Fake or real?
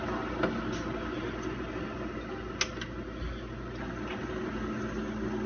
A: real